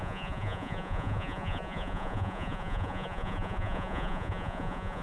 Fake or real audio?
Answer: fake